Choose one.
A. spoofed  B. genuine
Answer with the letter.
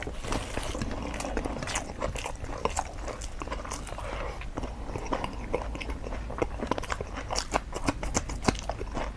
B